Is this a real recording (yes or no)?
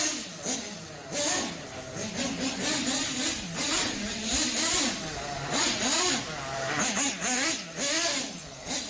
yes